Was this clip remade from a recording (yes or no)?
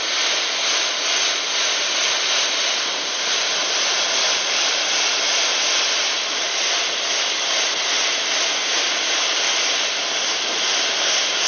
no